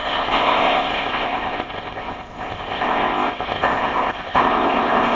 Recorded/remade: remade